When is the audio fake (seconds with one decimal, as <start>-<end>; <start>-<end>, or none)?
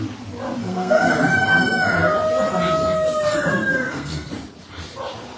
0.6-1.1; 3.5-4.3